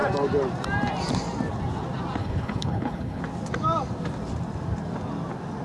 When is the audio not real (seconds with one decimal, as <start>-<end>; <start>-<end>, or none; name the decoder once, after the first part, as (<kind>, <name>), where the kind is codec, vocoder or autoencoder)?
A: 2.2-3.2 (codec, HILCodec)